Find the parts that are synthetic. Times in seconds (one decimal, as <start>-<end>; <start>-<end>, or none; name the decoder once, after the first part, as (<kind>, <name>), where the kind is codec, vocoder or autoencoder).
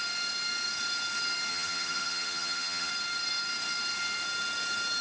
1.5-2.9 (vocoder, HiFi-GAN)